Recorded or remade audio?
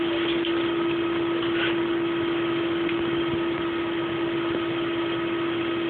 recorded